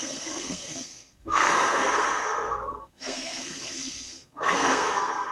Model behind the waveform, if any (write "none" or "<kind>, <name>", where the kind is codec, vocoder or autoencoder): codec, SNAC